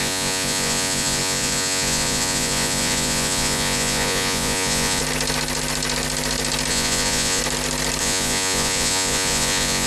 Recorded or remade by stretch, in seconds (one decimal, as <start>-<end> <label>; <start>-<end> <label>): 0.0-5.0 remade; 5.0-6.7 recorded; 6.7-7.4 remade; 7.4-8.0 recorded; 8.0-9.9 remade